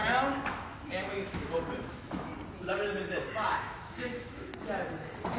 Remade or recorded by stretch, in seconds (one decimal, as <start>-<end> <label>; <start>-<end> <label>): 0.0-0.5 recorded; 0.5-2.3 remade; 2.3-3.6 recorded; 3.6-4.5 remade; 4.5-5.4 recorded

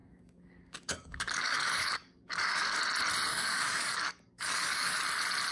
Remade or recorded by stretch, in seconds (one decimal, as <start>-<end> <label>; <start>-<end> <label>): 0.0-2.8 remade; 2.8-3.3 recorded; 3.3-5.0 remade; 5.0-5.5 recorded

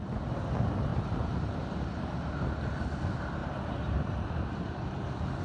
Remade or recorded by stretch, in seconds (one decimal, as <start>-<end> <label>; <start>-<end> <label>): 0.0-0.9 recorded; 0.9-2.3 remade; 2.3-3.4 recorded; 3.4-5.4 remade